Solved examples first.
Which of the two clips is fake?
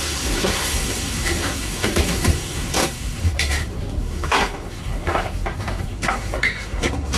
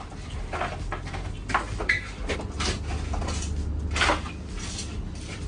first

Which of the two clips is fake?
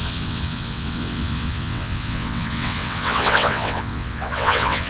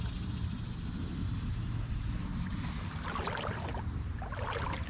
first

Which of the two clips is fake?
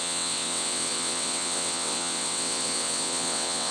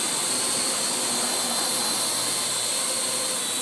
first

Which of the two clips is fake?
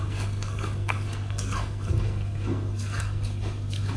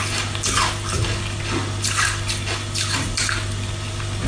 first